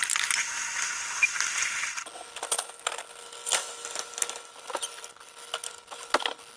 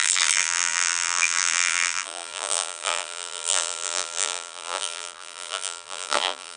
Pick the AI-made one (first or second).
second